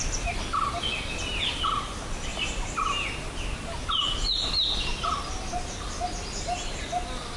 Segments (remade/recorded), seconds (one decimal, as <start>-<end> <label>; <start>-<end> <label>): 0.0-7.4 recorded